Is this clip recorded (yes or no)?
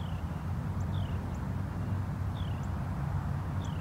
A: yes